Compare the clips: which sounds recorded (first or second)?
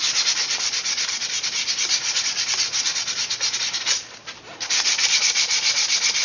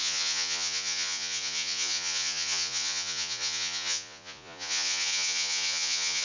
first